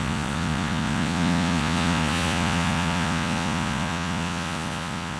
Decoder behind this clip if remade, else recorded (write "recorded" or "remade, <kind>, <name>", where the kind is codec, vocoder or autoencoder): remade, vocoder, Vocos